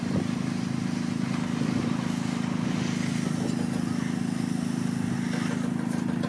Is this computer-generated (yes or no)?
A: no